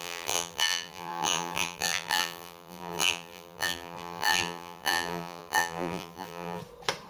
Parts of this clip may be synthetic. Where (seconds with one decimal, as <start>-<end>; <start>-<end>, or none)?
0.0-6.6